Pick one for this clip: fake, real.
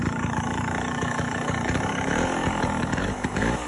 fake